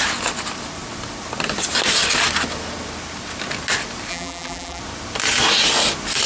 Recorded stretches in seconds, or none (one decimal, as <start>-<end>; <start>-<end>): 0.0-4.1; 4.8-6.3